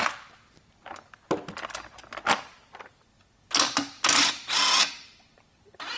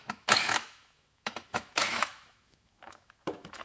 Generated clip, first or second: second